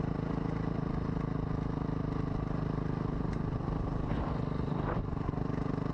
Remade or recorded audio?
recorded